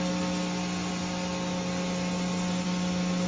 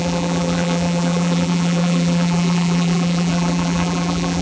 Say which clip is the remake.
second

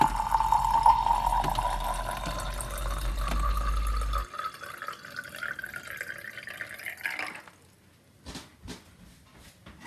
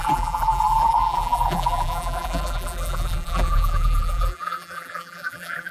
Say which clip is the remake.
second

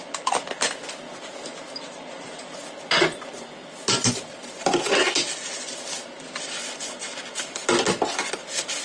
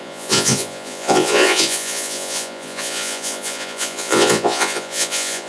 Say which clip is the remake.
second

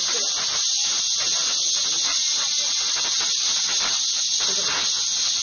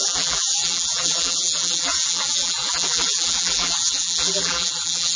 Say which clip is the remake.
second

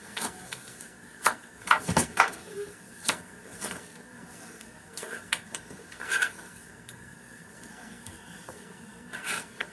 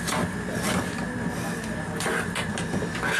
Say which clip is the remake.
first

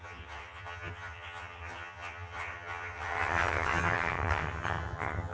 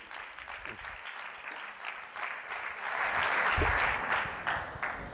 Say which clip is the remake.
first